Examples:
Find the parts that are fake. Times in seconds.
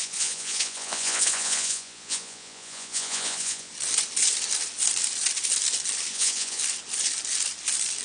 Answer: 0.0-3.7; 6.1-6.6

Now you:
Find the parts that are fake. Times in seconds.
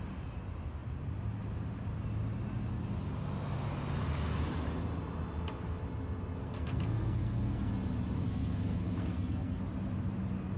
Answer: 6.4-7.7; 8.2-9.6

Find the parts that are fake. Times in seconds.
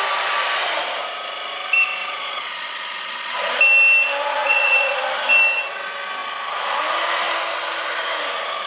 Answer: 2.0-3.6; 4.3-5.0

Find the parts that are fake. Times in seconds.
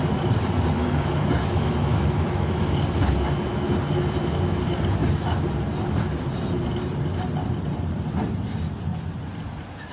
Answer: 0.8-2.7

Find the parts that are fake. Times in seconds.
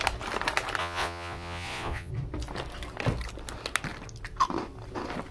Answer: 0.8-2.1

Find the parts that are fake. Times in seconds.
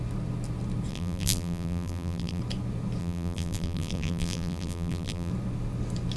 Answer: 0.9-2.4; 3.0-5.3